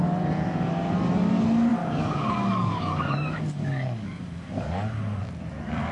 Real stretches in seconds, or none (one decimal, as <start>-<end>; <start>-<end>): 0.0-1.7; 5.2-5.9

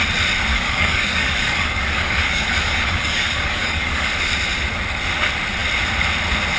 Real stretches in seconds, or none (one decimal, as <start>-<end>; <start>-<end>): 0.0-0.5; 4.1-6.6

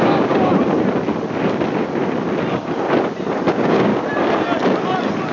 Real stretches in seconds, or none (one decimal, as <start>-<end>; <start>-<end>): 0.5-3.5; 3.9-5.3

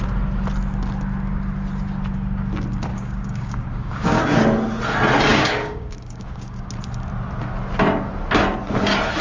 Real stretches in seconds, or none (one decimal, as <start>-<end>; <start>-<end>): 0.0-2.9; 4.2-5.3; 6.7-9.2

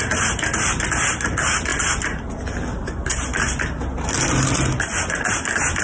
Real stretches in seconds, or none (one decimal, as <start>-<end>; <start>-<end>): 0.0-5.8

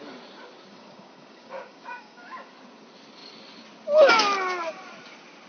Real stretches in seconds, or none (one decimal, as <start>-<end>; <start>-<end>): 0.0-0.7; 2.5-5.5